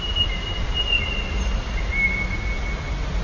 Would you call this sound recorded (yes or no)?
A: yes